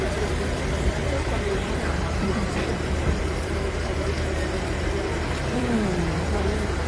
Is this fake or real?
fake